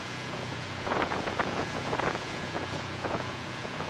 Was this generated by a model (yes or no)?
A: yes